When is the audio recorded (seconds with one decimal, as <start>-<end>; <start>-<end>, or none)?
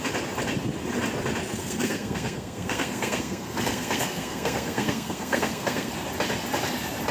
0.0-1.6; 5.9-7.1